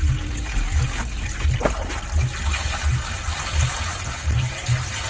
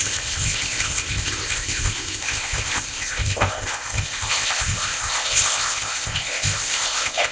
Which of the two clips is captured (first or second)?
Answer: first